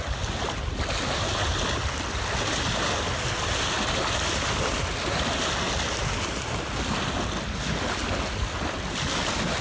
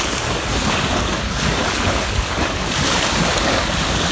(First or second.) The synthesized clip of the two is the second